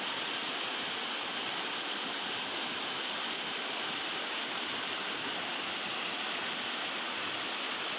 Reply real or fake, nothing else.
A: real